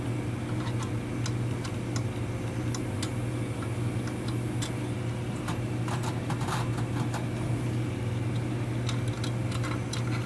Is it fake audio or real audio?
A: real